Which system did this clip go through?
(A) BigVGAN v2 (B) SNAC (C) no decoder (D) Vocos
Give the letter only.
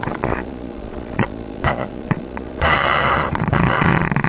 D